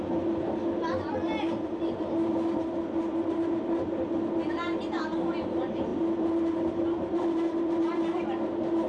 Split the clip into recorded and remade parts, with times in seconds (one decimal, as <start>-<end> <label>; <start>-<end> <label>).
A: 0.0-8.9 recorded